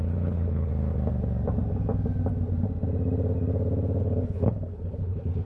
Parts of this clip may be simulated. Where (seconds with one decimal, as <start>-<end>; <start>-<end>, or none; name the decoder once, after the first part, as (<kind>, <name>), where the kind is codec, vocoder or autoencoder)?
0.0-0.7 (codec, HILCodec); 4.0-5.5